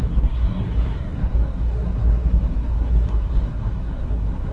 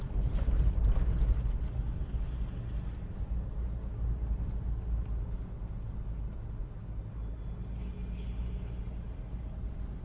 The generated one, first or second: first